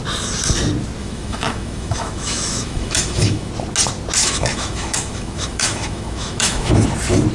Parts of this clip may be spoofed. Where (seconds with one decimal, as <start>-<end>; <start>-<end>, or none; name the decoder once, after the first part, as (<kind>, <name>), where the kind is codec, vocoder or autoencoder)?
1.0-3.5 (autoencoder, DAC-VAE); 4.2-6.7